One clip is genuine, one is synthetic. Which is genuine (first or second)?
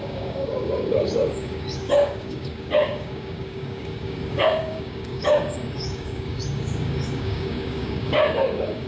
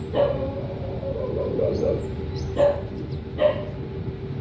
second